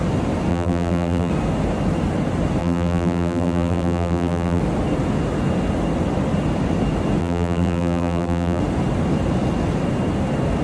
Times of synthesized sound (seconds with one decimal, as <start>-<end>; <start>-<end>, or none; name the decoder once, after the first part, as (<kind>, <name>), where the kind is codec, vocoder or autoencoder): 0.5-1.3 (vocoder, BigVGAN v2); 2.6-4.6; 7.2-8.6